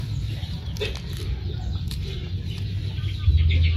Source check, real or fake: real